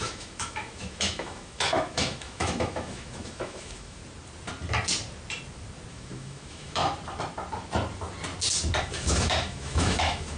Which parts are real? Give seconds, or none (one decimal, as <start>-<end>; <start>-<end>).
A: 4.0-5.9; 6.8-8.8